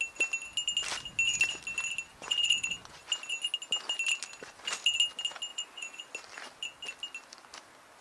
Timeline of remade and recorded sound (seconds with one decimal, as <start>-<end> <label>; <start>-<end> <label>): 0.0-2.1 recorded; 2.1-3.1 remade; 3.1-5.5 recorded; 5.5-6.0 remade; 6.0-8.0 recorded